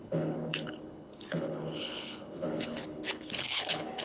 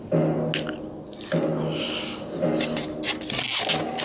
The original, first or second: second